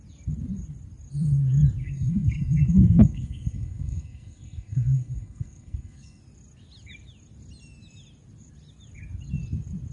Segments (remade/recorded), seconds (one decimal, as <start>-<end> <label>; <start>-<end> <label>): 0.0-1.8 recorded; 1.8-6.2 remade; 6.2-9.9 recorded